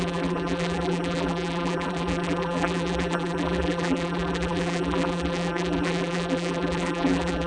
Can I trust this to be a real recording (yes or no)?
no